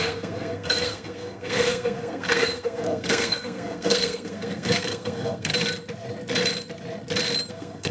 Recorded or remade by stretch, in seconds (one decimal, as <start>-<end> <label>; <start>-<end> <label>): 0.0-5.5 remade; 5.5-7.5 recorded; 7.5-7.9 remade